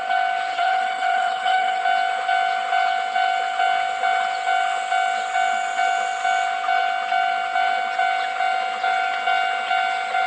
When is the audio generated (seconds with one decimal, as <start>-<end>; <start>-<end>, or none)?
0.5-1.8